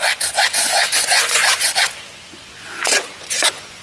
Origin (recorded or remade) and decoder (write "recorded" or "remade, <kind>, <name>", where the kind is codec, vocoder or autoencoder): remade, vocoder, Vocos